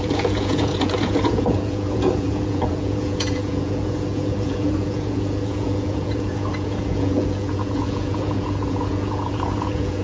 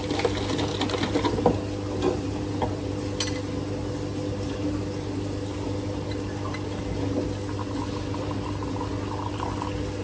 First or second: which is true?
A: second